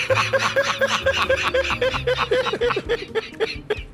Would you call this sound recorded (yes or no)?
yes